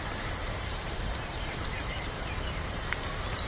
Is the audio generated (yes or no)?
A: yes